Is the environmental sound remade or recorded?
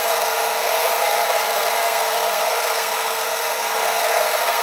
remade